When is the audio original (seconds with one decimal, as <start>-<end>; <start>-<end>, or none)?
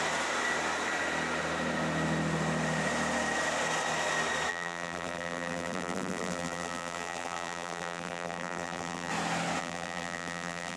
0.0-4.5; 9.1-9.6